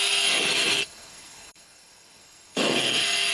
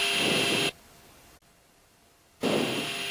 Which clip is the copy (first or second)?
first